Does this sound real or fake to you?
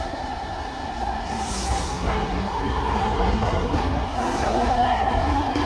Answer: fake